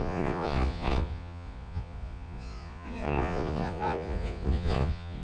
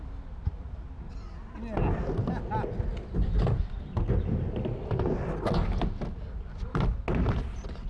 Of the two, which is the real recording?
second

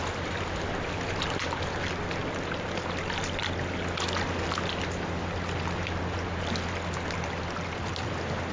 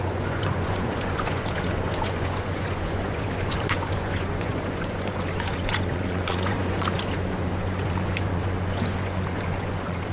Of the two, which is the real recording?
first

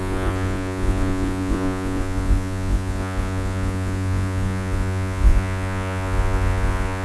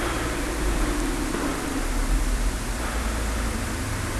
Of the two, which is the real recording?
second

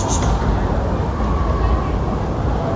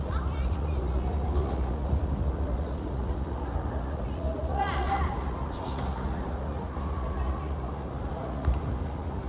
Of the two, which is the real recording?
first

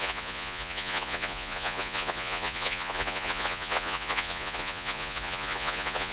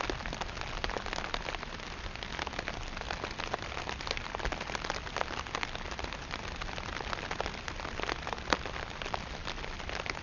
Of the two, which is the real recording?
second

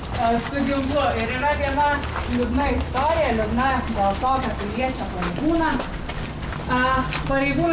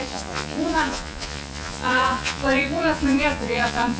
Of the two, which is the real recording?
first